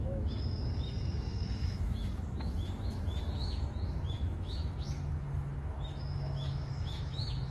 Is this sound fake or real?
fake